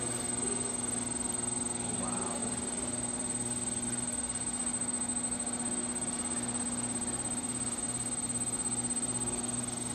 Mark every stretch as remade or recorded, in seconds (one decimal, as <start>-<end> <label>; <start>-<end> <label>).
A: 0.0-9.9 recorded